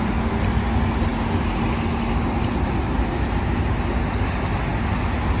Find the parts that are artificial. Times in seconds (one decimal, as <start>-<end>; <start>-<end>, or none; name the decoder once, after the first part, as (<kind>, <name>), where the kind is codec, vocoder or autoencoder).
none

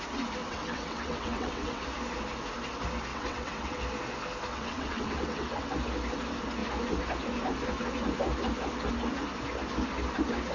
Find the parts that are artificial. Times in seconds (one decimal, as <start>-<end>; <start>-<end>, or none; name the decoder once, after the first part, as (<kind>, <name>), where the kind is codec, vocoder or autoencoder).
0.4-1.8 (vocoder, WaveNeXt); 3.1-3.8; 4.5-5.7

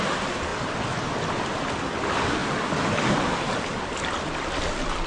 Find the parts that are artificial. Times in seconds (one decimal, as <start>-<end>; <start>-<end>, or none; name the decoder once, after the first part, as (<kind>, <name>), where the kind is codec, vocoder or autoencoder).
none

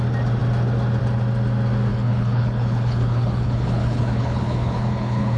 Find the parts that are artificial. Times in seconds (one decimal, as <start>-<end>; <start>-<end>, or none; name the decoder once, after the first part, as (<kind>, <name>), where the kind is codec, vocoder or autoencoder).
1.9-5.4 (codec, HILCodec)

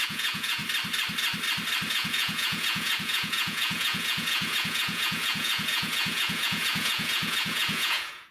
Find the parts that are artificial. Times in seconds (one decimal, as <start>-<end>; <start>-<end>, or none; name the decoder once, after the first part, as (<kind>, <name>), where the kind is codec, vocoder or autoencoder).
0.0-0.6 (vocoder, Vocos); 1.9-8.3

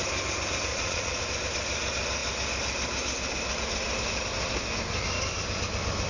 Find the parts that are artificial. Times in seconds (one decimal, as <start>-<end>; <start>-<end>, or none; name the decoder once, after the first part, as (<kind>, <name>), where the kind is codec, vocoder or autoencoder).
0.7-1.2 (vocoder, Vocos)